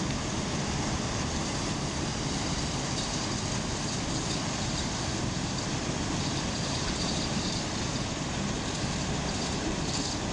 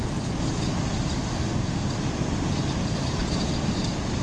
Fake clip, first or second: first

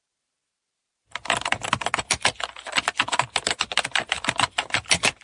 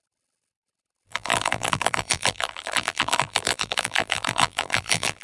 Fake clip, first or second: second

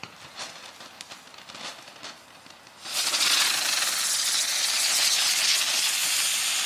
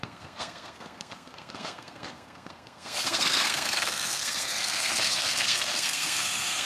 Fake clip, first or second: second